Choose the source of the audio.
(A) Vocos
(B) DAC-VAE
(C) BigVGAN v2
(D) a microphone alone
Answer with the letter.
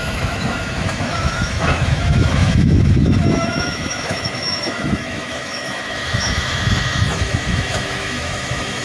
B